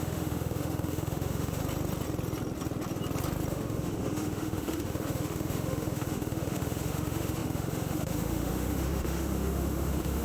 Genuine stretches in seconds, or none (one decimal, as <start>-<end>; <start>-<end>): 1.6-3.5